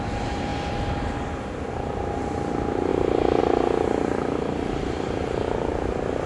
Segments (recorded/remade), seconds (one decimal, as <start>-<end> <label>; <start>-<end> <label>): 0.0-6.3 recorded